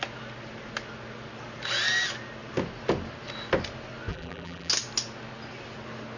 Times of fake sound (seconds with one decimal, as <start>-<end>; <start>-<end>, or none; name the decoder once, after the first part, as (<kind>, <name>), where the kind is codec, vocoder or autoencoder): 4.1-4.7 (vocoder, BigVGAN v2)